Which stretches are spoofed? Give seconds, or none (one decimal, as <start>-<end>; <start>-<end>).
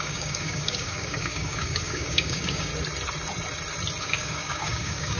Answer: 0.0-2.7; 4.0-5.2